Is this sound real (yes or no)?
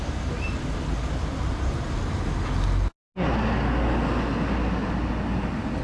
yes